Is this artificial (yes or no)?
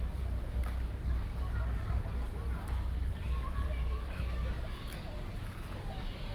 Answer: yes